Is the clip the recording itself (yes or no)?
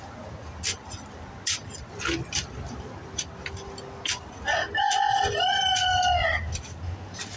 yes